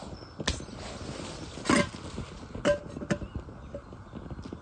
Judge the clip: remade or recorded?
recorded